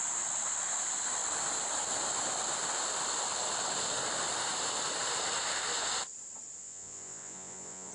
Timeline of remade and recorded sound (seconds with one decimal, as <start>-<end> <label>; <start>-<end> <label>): 0.0-6.6 recorded; 6.6-7.9 remade